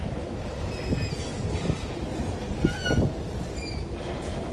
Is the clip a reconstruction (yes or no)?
no